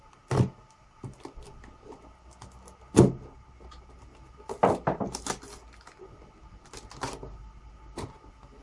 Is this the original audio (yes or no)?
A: yes